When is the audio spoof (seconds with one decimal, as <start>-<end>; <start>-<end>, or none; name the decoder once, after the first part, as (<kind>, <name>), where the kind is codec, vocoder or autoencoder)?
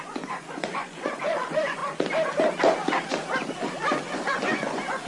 0.0-1.8 (vocoder, Vocos); 4.1-5.1